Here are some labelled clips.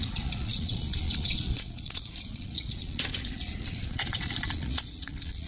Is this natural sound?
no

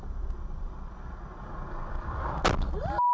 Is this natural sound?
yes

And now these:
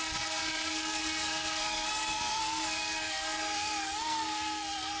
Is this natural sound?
no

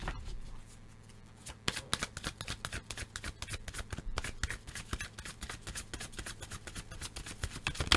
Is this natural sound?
yes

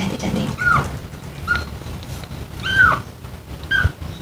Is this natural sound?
yes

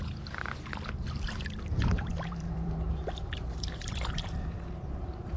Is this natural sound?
no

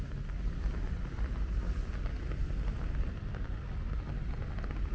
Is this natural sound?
yes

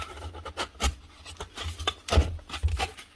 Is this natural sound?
yes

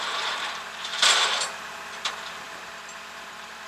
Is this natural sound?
no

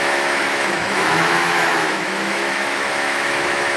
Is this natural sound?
no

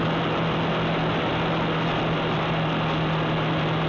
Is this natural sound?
yes